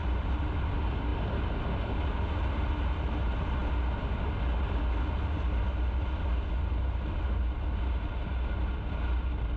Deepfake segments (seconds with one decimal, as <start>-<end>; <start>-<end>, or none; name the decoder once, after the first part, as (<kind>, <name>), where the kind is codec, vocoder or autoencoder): none